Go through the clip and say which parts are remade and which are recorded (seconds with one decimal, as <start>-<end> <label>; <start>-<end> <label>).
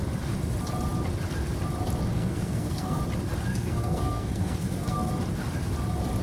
0.0-2.1 recorded; 2.1-3.0 remade; 3.0-3.5 recorded; 3.5-5.1 remade; 5.1-6.2 recorded